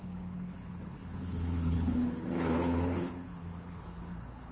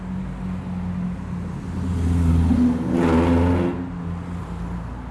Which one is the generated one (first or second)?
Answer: first